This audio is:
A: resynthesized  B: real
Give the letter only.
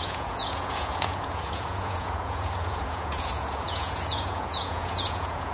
A